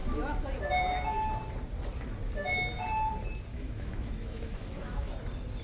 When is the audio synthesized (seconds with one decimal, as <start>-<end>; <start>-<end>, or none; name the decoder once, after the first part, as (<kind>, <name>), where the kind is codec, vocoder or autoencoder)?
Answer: 3.5-5.1 (autoencoder, DAC-VAE)